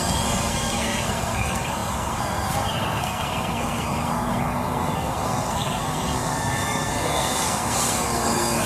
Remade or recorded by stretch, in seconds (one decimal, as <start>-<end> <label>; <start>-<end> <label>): 0.0-8.7 remade